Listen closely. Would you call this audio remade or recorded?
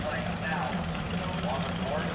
remade